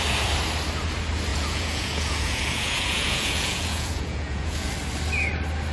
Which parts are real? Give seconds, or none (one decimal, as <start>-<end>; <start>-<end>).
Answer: 0.0-1.3; 4.7-5.7